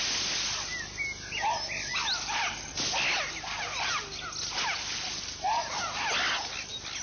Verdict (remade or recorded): recorded